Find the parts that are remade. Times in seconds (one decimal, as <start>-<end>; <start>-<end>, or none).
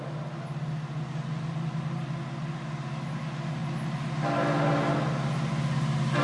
none